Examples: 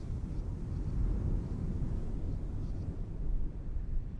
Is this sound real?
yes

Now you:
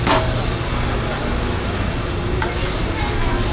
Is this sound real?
yes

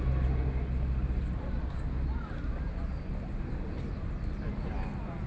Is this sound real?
yes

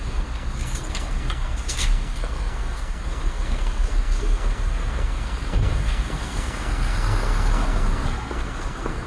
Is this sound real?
no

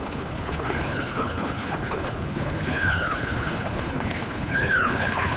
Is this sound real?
no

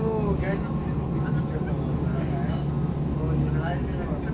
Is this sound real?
yes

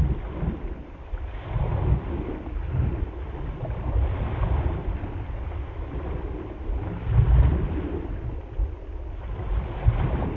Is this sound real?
yes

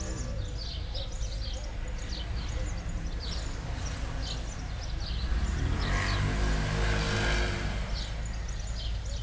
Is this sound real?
yes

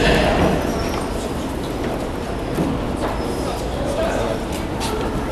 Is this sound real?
yes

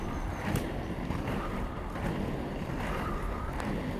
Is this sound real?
yes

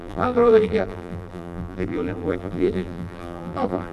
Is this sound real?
no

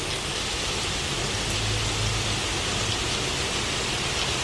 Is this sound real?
yes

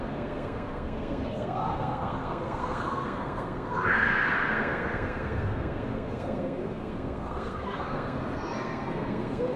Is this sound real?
no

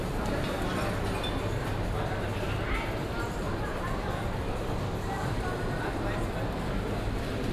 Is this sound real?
yes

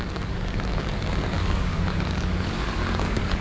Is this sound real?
no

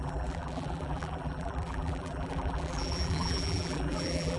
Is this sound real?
no